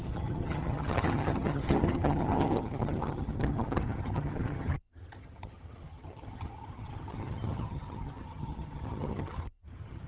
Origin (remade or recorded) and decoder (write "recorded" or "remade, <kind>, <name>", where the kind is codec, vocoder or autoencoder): remade, vocoder, HiFi-GAN